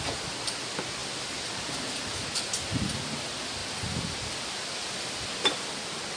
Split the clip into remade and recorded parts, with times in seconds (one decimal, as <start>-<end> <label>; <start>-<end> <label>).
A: 0.0-6.2 recorded